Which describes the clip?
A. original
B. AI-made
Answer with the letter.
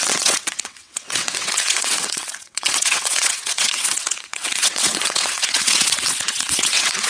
B